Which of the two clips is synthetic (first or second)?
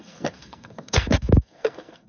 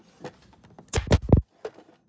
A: first